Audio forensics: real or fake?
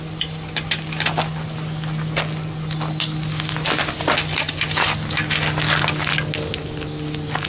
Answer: real